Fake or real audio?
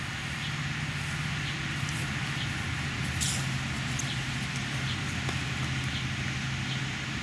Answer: real